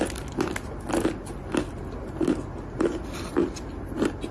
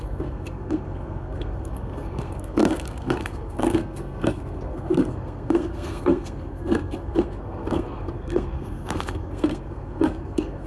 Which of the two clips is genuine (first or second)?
first